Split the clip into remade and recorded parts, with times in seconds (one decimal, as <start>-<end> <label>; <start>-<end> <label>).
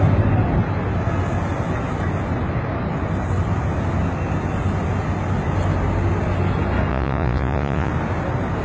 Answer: 0.0-6.9 recorded; 6.9-7.9 remade; 7.9-8.6 recorded